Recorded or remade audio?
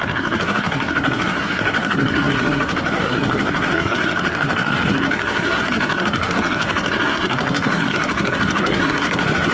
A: remade